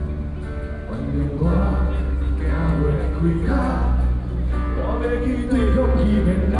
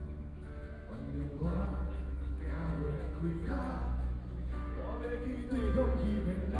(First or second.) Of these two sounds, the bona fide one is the first